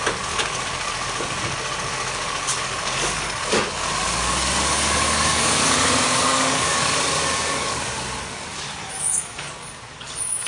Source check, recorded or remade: remade